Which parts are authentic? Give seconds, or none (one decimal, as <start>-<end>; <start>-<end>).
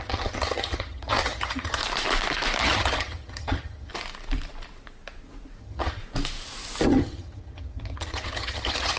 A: 1.8-2.6; 3.9-5.6; 6.0-6.9